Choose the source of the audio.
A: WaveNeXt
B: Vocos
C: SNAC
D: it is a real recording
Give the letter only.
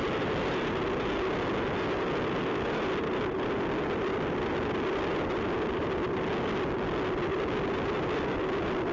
D